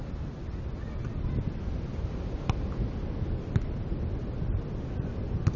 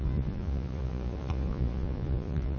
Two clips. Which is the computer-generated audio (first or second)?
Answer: second